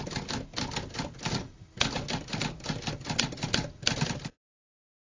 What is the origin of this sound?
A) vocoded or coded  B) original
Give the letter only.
B